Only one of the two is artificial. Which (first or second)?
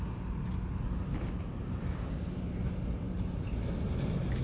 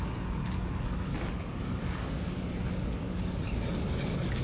second